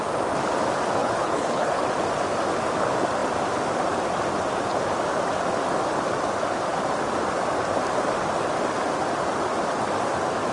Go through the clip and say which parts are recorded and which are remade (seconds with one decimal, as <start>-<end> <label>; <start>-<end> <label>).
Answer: 0.0-1.0 recorded; 1.0-1.8 remade; 1.8-10.5 recorded